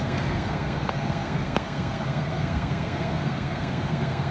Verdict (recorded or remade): remade